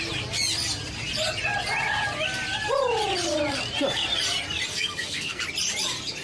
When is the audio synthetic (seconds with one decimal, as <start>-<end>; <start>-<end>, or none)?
4.7-5.4